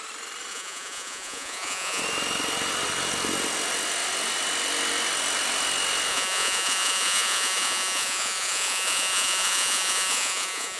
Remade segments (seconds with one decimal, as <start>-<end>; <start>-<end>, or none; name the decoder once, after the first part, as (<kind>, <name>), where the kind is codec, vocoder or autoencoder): 0.5-2.0 (vocoder, Vocos); 6.1-10.8